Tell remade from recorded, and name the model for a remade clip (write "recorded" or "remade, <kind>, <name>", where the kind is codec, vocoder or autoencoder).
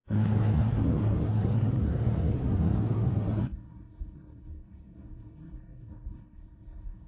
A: remade, codec, SNAC